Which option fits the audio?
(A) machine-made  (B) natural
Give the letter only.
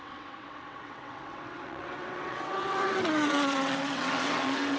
A